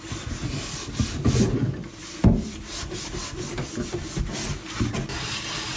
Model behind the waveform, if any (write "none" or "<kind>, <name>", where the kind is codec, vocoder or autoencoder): none